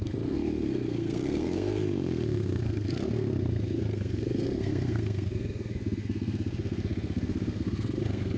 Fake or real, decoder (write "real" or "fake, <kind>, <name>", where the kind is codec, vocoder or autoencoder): fake, codec, SNAC